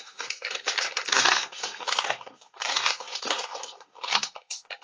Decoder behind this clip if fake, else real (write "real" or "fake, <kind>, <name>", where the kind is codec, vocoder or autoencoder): fake, codec, SNAC